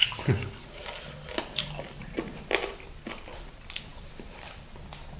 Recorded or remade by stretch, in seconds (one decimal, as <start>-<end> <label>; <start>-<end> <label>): 0.0-5.2 recorded